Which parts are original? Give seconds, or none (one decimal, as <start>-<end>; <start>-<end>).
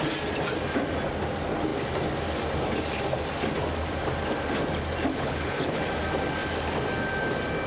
0.0-5.1; 5.8-7.7